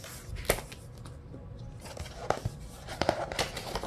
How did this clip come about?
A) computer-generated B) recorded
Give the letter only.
B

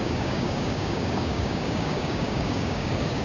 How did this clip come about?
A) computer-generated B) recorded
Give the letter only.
A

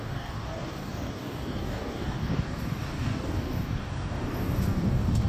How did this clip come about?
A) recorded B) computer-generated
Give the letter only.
B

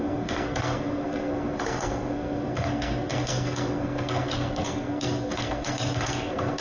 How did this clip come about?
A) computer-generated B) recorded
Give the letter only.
A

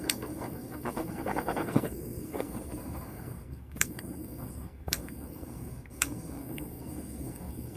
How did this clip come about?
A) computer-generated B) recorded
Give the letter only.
A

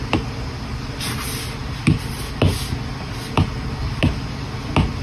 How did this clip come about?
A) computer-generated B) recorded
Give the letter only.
B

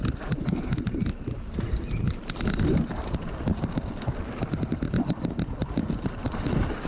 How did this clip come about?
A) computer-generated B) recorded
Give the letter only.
B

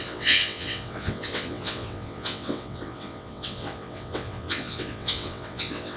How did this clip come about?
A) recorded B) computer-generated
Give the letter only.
B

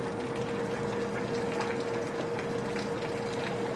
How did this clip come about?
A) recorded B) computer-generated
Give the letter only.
A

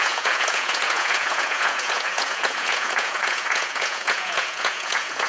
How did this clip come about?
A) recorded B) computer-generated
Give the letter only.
B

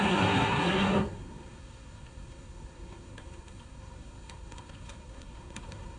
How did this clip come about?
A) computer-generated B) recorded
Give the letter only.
A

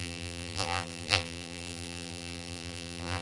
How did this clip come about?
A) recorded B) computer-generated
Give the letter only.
B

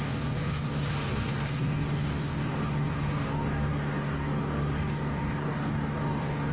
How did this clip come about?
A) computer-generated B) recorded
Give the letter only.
A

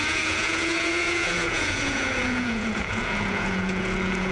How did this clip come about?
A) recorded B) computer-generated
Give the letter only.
B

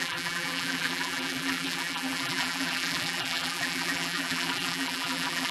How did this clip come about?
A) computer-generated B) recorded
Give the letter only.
A